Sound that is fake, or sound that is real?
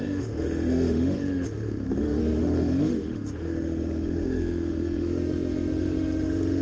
fake